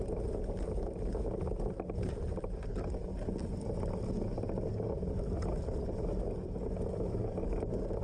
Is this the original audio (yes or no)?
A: yes